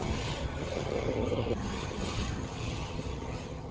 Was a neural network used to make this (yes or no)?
yes